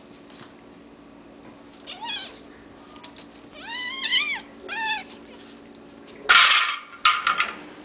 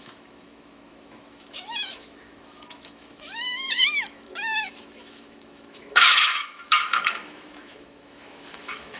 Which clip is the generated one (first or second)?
second